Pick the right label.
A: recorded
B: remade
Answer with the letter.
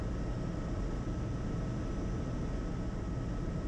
A